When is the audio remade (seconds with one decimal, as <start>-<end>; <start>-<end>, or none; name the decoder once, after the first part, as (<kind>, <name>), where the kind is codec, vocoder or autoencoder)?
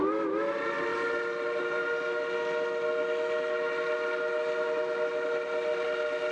none